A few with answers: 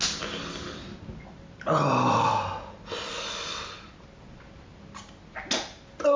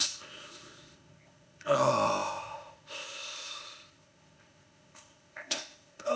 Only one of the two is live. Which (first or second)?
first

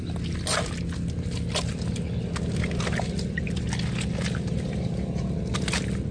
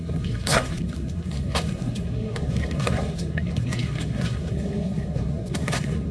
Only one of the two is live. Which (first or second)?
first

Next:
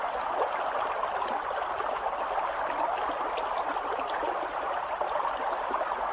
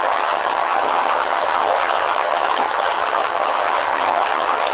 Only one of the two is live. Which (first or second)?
first